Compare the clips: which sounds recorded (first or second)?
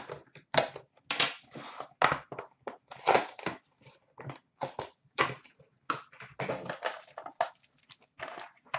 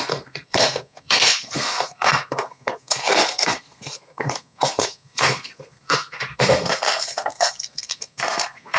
first